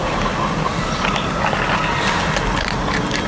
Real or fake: real